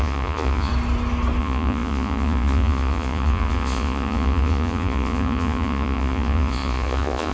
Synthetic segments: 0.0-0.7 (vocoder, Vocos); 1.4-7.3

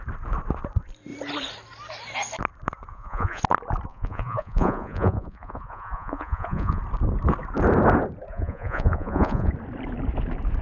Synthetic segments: 2.9-3.4 (vocoder, Vocos); 3.9-6.8; 8.3-9.5

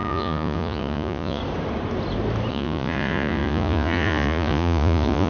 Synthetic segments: 0.0-1.4 (vocoder, Vocos); 2.5-5.3